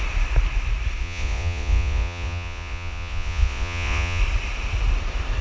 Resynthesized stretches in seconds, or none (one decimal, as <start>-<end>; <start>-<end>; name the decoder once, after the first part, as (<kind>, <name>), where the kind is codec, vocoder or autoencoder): 1.0-4.2 (vocoder, Vocos)